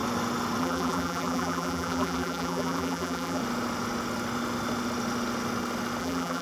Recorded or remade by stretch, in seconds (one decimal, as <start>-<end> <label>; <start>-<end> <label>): 0.0-0.6 recorded; 0.6-3.4 remade; 3.4-6.0 recorded; 6.0-6.4 remade